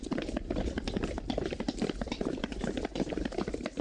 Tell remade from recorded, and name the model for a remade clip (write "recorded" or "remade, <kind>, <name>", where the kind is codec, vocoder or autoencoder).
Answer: recorded